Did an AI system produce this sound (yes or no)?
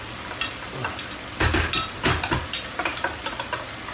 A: no